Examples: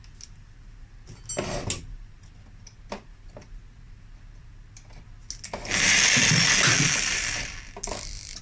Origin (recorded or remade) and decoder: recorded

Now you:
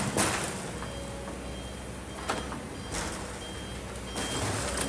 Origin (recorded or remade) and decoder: recorded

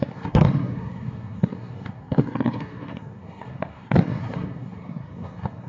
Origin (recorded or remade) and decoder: remade, codec, SNAC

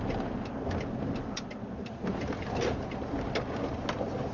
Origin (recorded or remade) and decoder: recorded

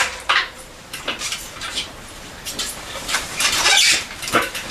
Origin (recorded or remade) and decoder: remade, vocoder, BigVGAN v2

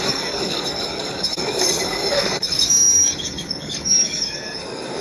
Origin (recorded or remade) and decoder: remade, codec, DAC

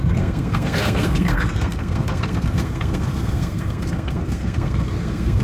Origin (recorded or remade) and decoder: remade, codec, SNAC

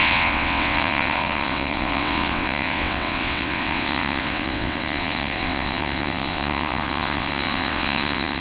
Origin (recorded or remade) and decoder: remade, vocoder, WaveNeXt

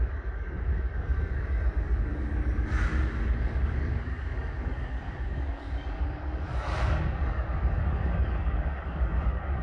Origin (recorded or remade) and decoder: remade, codec, DAC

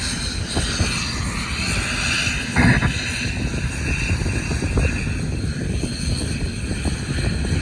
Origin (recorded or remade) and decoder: recorded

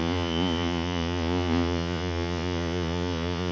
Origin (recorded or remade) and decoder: remade, vocoder, Vocos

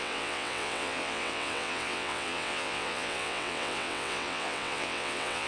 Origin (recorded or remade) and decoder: remade, vocoder, WaveNeXt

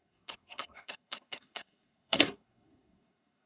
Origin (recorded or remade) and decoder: remade, codec, SNAC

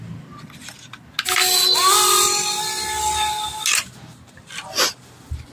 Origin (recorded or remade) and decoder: recorded